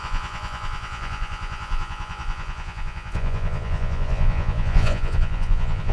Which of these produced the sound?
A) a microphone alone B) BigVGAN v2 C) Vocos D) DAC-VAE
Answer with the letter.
C